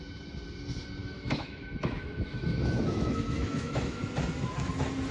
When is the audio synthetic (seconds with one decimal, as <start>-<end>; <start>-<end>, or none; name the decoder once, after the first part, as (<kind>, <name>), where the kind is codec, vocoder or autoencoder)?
1.0-4.1 (autoencoder, DAC-VAE)

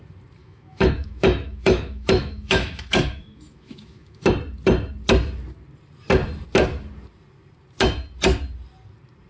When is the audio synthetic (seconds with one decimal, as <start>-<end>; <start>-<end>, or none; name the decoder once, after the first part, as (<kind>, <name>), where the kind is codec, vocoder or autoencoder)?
0.4-4.3 (autoencoder, DAC-VAE)

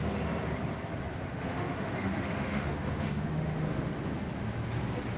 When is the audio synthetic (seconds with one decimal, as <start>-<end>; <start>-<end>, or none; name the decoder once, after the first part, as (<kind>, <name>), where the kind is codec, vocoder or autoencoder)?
1.1-3.9 (autoencoder, DAC-VAE)

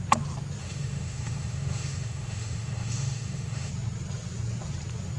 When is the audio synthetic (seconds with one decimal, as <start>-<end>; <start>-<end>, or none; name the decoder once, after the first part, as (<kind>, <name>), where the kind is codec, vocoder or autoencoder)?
0.6-3.7 (autoencoder, DAC-VAE)

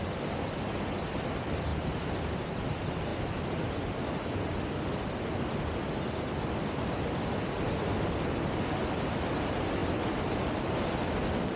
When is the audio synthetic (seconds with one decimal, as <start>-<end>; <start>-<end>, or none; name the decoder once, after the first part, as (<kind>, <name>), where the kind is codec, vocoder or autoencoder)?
none

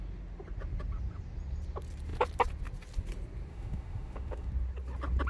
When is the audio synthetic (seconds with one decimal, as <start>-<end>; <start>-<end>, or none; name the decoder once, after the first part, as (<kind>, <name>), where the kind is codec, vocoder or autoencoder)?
3.5-4.5 (autoencoder, DAC-VAE)

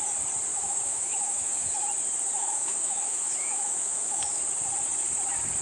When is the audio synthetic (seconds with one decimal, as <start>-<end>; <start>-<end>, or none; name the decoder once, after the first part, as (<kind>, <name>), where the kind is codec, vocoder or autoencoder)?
0.5-1.7 (autoencoder, DAC-VAE); 2.4-4.4